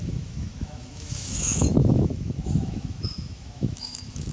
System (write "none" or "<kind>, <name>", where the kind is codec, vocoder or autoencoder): autoencoder, DAC-VAE